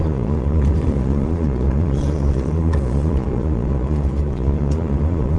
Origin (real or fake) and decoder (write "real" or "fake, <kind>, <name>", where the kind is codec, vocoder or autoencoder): fake, vocoder, Vocos